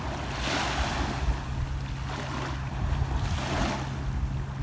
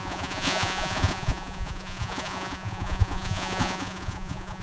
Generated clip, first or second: second